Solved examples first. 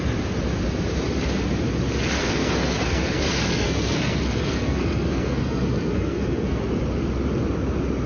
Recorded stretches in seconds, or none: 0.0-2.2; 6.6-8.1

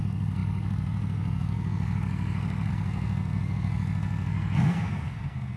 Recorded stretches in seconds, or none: none

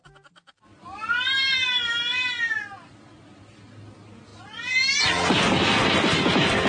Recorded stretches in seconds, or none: 0.0-6.7

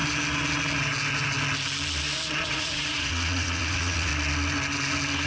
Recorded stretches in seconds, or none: 0.0-2.4; 4.1-5.3